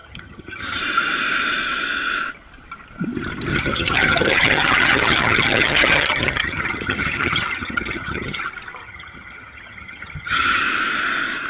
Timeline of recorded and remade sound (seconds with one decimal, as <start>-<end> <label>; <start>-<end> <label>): 0.0-0.8 remade; 0.8-3.5 recorded; 3.5-8.4 remade; 8.4-8.8 recorded; 8.8-10.6 remade; 10.6-11.5 recorded